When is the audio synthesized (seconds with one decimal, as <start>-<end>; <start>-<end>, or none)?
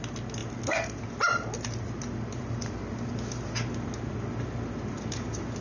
none